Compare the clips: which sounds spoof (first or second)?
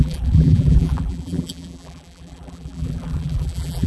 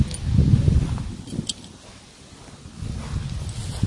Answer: first